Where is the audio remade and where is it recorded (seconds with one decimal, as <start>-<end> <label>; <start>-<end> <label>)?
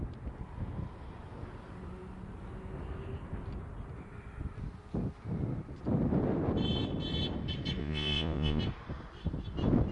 0.0-7.8 recorded; 7.8-8.6 remade; 8.6-9.9 recorded